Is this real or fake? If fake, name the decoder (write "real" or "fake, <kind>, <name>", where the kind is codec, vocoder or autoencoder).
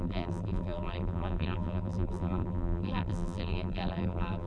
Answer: fake, vocoder, BigVGAN v2